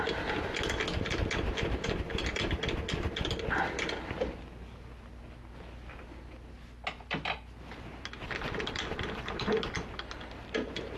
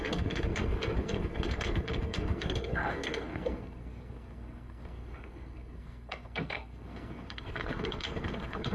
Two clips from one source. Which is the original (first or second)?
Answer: first